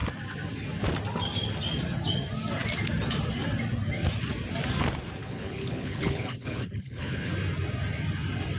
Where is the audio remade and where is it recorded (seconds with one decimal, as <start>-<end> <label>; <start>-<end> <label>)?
0.0-5.2 recorded; 5.2-7.3 remade; 7.3-8.6 recorded

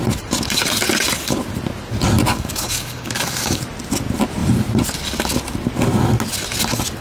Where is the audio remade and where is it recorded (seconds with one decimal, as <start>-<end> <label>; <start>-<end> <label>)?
0.0-2.3 recorded; 2.3-3.6 remade; 3.6-7.0 recorded

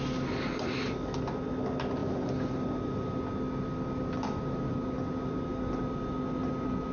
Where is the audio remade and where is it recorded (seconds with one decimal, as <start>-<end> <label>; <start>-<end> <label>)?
0.0-6.9 recorded

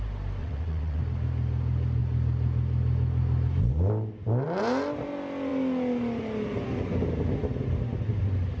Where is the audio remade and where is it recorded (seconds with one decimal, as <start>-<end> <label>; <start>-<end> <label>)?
0.0-0.4 recorded; 0.4-1.0 remade; 1.0-8.6 recorded

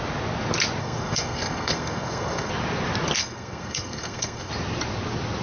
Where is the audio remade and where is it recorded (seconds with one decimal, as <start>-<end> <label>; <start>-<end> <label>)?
0.0-0.8 recorded; 0.8-2.5 remade; 2.5-3.2 recorded; 3.2-4.5 remade; 4.5-5.4 recorded

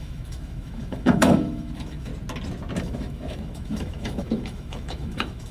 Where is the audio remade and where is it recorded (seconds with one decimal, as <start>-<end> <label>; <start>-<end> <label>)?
0.0-2.1 remade; 2.1-2.8 recorded; 2.8-5.5 remade

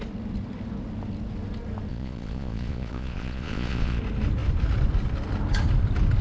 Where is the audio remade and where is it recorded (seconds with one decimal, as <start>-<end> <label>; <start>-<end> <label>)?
0.0-1.9 recorded; 1.9-4.0 remade; 4.0-6.2 recorded